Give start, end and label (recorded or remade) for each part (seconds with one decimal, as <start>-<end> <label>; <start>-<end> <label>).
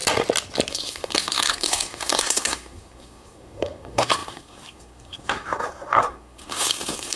0.0-0.7 recorded; 0.7-7.2 remade